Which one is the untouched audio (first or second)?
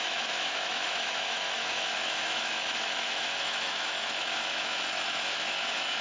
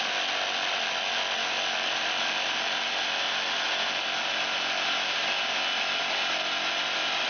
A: second